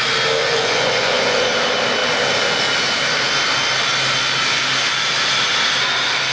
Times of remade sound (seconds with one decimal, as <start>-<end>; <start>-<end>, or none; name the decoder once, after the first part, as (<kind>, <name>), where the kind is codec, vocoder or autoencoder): 0.4-1.5 (vocoder, Vocos)